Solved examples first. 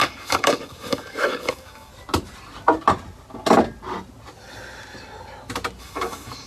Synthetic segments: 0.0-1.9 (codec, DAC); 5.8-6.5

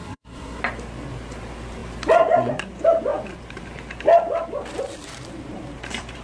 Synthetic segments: 0.0-0.6 (codec, SNAC)

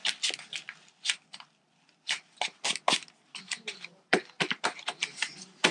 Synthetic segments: 3.4-5.7 (vocoder, BigVGAN v2)

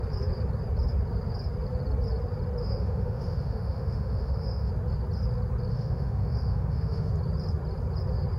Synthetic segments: 2.6-4.7 (autoencoder, DAC-VAE); 5.7-7.1

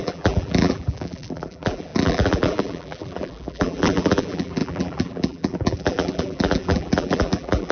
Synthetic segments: 0.0-7.7 (vocoder, BigVGAN v2)